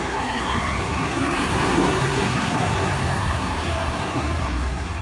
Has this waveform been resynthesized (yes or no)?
yes